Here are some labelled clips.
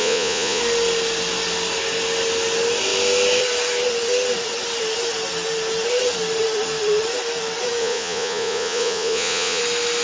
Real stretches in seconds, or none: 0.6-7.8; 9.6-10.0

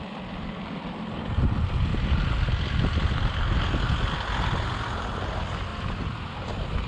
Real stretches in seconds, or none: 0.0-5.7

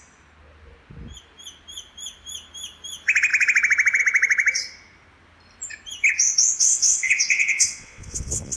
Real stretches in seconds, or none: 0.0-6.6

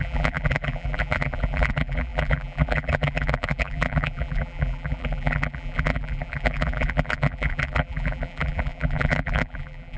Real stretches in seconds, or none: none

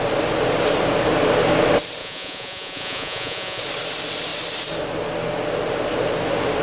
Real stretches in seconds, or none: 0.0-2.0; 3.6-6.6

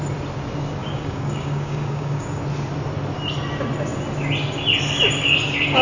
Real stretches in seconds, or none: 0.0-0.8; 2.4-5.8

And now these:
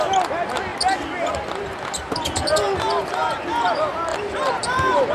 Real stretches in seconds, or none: 0.0-4.1